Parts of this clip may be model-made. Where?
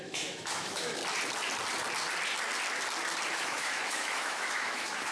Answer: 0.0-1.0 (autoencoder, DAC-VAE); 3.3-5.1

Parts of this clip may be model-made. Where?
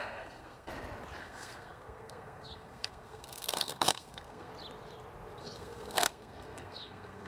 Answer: 0.0-0.7 (codec, SNAC); 1.2-4.5; 5.4-7.3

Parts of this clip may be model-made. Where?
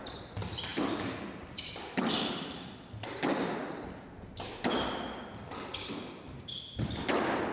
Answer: none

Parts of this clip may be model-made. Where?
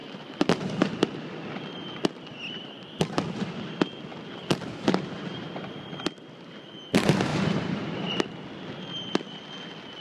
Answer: 0.0-0.7 (vocoder, BigVGAN v2); 7.3-8.1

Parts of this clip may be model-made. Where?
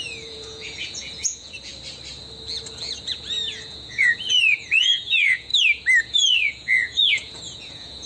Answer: 0.0-1.7 (vocoder, Vocos); 3.0-5.5; 6.0-8.1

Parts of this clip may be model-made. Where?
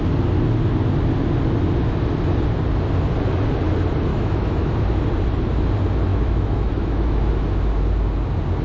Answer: 4.1-4.7 (autoencoder, DAC-VAE); 6.1-7.3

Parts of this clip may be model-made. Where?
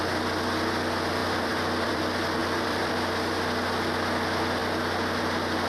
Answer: 1.2-2.0 (vocoder, BigVGAN v2); 2.4-2.9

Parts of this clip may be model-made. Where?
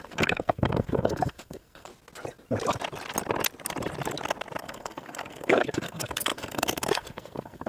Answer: 0.0-1.9 (codec, SNAC); 4.6-7.7